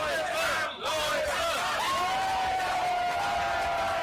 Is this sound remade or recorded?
recorded